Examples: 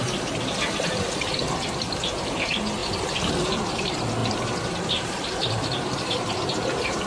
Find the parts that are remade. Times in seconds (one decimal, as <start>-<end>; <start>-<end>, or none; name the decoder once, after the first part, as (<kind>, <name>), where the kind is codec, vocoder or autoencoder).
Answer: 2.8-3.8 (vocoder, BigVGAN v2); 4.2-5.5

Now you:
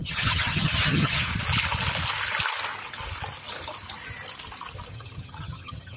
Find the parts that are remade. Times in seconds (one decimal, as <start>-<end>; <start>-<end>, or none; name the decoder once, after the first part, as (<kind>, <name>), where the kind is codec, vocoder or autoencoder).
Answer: 0.0-1.3 (vocoder, HiFi-GAN); 4.9-6.0

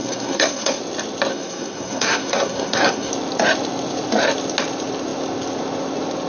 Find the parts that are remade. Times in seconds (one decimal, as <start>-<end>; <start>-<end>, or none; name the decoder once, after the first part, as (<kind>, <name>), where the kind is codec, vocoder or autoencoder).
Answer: 0.0-0.8 (codec, SNAC); 1.3-3.1

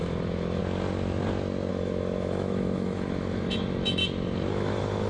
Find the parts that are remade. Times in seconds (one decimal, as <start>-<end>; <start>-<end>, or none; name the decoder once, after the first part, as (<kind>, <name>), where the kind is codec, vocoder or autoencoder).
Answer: 0.0-0.6 (autoencoder, DAC-VAE); 1.7-4.0; 4.5-5.1

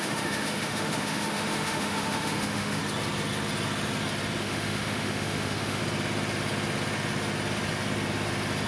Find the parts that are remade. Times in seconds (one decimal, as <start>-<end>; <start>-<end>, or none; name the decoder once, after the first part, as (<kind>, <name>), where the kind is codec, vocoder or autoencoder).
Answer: 0.0-2.8 (autoencoder, DAC-VAE); 4.4-5.8

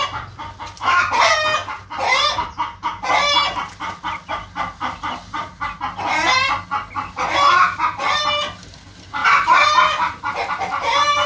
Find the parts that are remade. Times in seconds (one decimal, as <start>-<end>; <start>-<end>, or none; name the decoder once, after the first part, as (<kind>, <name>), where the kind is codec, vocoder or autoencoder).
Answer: 9.2-10.5 (vocoder, BigVGAN v2)